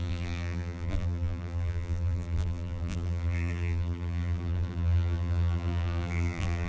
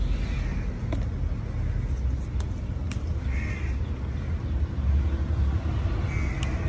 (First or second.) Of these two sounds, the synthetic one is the first